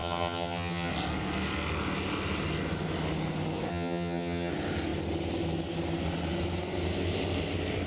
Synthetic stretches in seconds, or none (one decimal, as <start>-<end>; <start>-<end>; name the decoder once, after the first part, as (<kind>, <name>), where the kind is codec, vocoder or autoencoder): 0.0-0.9 (vocoder, HiFi-GAN); 3.7-4.5